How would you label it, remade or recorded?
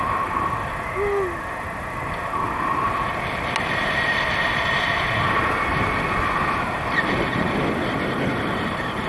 recorded